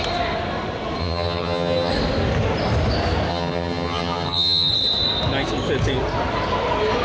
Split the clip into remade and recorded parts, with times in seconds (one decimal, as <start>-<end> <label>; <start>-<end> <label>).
0.0-1.0 recorded; 1.0-1.9 remade; 1.9-3.3 recorded; 3.3-4.7 remade; 4.7-7.0 recorded